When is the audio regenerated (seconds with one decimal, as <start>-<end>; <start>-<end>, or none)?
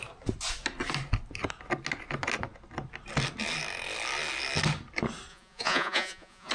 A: 5.3-6.5